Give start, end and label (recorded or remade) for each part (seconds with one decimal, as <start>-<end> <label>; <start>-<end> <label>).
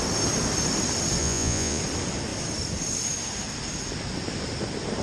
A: 0.0-1.2 recorded; 1.2-1.8 remade; 1.8-5.0 recorded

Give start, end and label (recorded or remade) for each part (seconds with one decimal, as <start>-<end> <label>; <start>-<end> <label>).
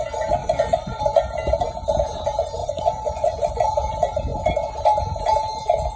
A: 0.0-0.4 recorded; 0.4-1.0 remade; 1.0-2.6 recorded; 2.6-3.6 remade; 3.6-6.0 recorded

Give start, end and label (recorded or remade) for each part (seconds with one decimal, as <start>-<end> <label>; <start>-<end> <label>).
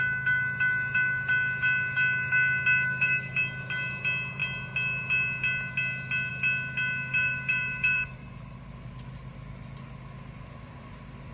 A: 0.0-7.1 recorded; 7.1-8.3 remade; 8.3-11.3 recorded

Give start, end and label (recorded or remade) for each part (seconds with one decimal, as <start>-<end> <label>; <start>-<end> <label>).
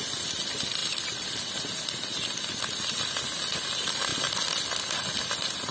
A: 0.0-5.7 recorded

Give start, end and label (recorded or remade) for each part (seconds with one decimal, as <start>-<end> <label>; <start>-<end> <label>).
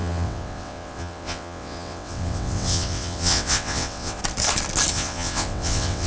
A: 0.0-4.2 remade; 4.2-4.9 recorded; 4.9-6.1 remade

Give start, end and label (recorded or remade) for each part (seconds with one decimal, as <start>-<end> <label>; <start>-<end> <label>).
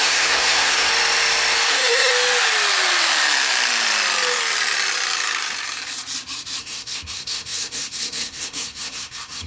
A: 0.0-0.9 remade; 0.9-1.7 recorded; 1.7-2.1 remade; 2.1-6.6 recorded; 6.6-9.5 remade